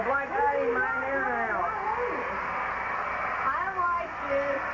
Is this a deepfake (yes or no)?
no